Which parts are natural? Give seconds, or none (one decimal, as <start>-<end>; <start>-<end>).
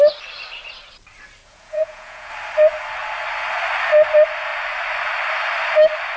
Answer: 0.0-1.4; 2.3-6.2